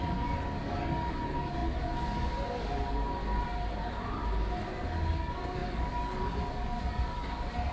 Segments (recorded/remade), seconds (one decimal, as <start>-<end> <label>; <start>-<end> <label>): 0.0-3.2 remade; 3.2-3.8 recorded; 3.8-4.2 remade; 4.2-4.8 recorded; 4.8-7.7 remade